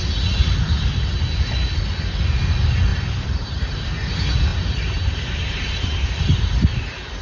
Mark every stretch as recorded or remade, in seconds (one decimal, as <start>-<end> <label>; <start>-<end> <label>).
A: 0.0-2.9 recorded; 2.9-3.8 remade; 3.8-4.5 recorded; 4.5-6.4 remade; 6.4-7.2 recorded